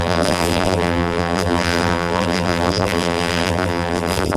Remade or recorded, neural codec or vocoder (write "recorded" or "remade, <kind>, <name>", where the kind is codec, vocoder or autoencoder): remade, vocoder, BigVGAN v2